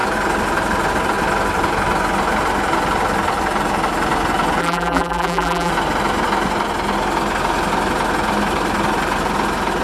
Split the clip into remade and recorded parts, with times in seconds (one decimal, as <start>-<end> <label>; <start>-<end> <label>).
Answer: 0.0-4.6 recorded; 4.6-5.7 remade; 5.7-9.8 recorded